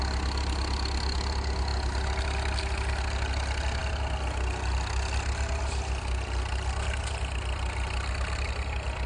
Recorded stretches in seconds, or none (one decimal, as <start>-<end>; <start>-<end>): 0.0-9.1